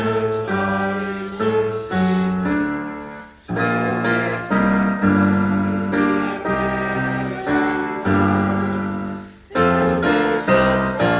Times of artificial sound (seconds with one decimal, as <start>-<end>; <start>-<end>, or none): 1.7-3.2